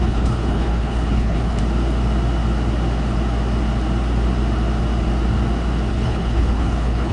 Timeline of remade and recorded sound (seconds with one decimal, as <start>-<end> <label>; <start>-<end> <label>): 0.0-1.6 remade; 1.6-5.9 recorded; 5.9-7.1 remade